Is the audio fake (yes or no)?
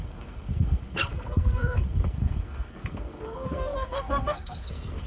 yes